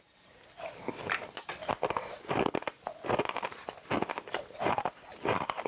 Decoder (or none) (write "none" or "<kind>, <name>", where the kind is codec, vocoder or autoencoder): none